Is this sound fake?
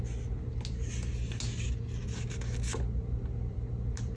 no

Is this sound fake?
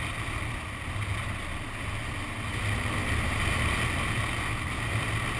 no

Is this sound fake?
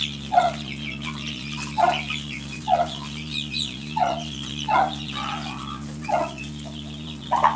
yes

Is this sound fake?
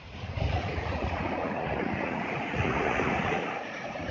yes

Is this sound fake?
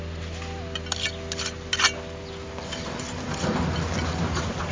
no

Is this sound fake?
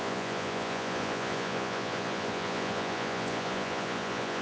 yes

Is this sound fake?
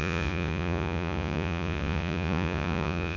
yes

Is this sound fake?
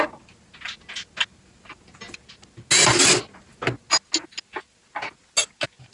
no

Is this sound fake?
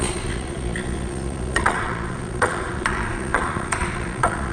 yes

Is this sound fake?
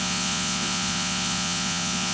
yes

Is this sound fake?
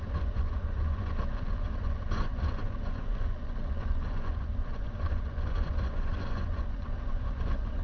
yes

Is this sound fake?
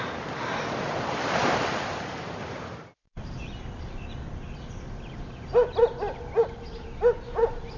no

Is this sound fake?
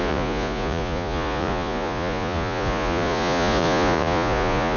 yes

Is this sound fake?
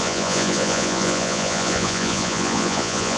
yes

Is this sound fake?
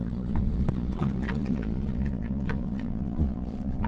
yes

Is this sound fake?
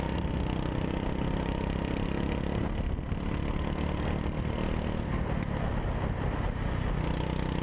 no